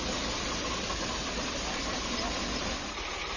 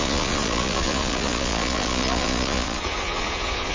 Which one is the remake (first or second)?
second